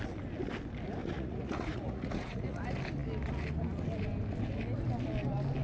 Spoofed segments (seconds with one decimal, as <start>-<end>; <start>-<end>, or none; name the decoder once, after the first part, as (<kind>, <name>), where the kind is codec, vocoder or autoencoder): 1.0-2.6 (vocoder, Vocos)